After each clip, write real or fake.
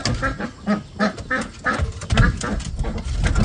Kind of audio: real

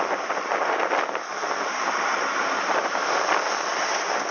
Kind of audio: real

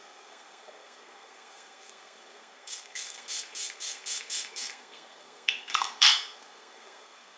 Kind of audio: fake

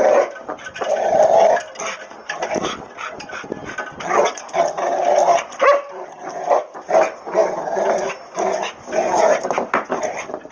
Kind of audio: real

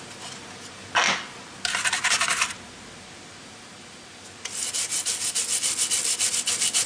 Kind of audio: real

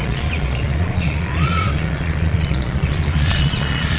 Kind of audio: fake